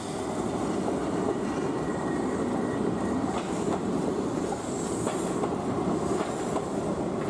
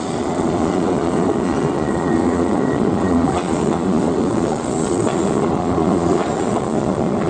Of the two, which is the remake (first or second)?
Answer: second